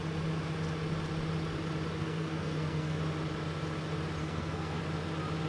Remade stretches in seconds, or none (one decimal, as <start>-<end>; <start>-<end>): 2.0-3.0; 4.2-4.8